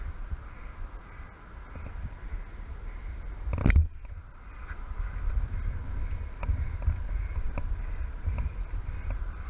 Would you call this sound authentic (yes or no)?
yes